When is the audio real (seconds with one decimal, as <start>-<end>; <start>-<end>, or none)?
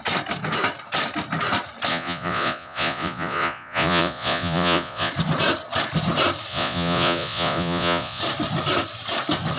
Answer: 0.0-1.9; 5.1-6.5; 8.2-9.6